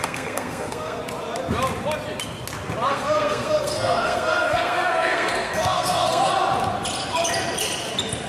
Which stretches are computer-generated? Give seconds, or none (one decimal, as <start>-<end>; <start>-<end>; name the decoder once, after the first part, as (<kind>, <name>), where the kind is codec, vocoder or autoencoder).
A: 0.0-1.0 (codec, SNAC); 2.9-6.3